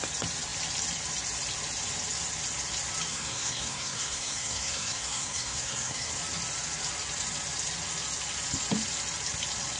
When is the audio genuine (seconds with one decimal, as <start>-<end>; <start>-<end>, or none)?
0.0-3.1; 6.1-9.8